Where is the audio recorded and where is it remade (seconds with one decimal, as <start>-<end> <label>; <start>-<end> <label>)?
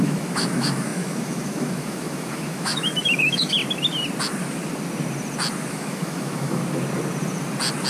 0.0-3.6 remade; 3.6-5.7 recorded; 5.7-6.6 remade; 6.6-7.9 recorded